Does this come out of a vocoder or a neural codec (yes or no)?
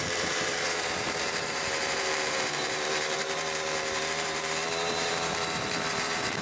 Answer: yes